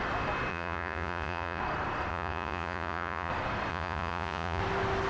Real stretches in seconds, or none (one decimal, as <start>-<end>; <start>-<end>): 0.0-0.5; 1.6-2.1; 3.3-3.7; 4.6-5.1